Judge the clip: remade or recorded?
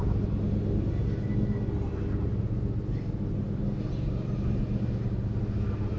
recorded